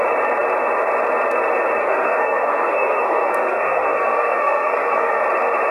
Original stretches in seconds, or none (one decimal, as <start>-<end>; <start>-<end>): 0.0-1.8; 5.2-5.7